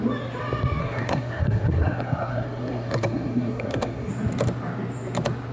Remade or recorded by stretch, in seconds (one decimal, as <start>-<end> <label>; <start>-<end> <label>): 0.0-0.8 recorded; 0.8-4.1 remade; 4.1-5.5 recorded